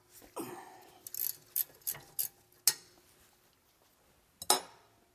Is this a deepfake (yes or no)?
no